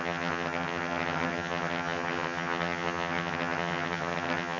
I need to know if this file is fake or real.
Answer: fake